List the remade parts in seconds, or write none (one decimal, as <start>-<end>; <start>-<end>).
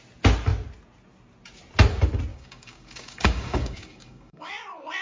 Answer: 2.3-4.5